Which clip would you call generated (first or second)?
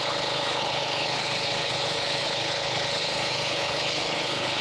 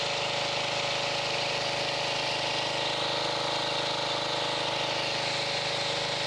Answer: first